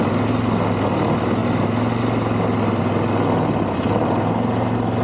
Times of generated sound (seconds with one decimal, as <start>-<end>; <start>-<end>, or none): none